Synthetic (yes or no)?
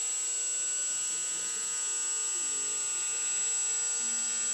no